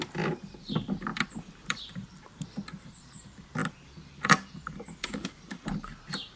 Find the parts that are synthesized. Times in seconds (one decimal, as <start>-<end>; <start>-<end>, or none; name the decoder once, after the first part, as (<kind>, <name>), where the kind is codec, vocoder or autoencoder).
1.1-2.1 (vocoder, BigVGAN v2); 3.6-6.0